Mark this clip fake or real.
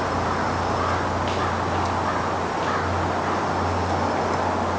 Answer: real